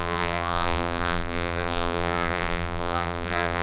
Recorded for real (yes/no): no